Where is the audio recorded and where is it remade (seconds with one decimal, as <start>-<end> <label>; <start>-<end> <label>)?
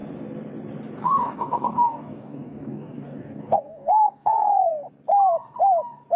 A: 0.0-1.0 recorded; 1.0-4.7 remade; 4.7-6.2 recorded